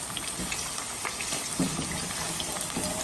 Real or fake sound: real